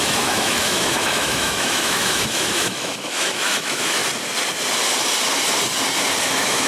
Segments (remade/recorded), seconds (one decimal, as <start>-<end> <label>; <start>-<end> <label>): 0.0-4.0 remade; 4.0-6.2 recorded; 6.2-6.7 remade